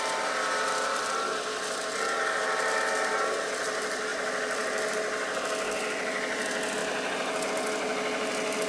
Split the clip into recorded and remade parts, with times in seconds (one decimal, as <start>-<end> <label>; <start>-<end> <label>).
0.0-8.7 recorded